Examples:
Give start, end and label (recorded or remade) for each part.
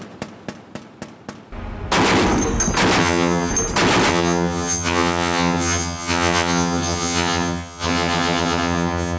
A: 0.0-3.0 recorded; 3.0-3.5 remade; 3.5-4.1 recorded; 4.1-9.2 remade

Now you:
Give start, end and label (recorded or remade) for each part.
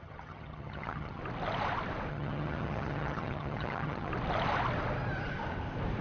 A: 0.0-1.2 remade; 1.2-2.1 recorded; 2.1-4.1 remade; 4.1-6.0 recorded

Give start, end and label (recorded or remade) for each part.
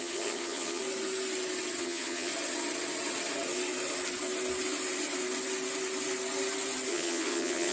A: 0.0-0.8 remade; 0.8-1.8 recorded; 1.8-2.3 remade; 2.3-6.9 recorded; 6.9-7.7 remade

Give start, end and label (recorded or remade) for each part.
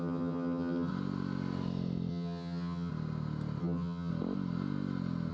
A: 0.0-0.9 remade; 0.9-2.1 recorded; 2.1-2.9 remade; 2.9-3.6 recorded; 3.6-4.1 remade; 4.1-5.3 recorded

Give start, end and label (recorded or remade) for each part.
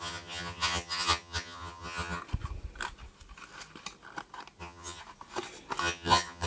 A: 0.0-2.2 remade; 2.2-4.6 recorded; 4.6-5.0 remade; 5.0-5.8 recorded; 5.8-6.5 remade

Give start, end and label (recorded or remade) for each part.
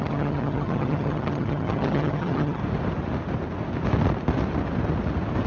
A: 0.0-2.6 remade; 2.6-5.5 recorded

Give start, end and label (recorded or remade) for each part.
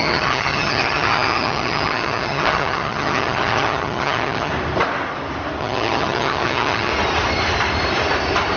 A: 0.0-4.5 remade; 4.5-5.6 recorded; 5.6-6.9 remade; 6.9-8.6 recorded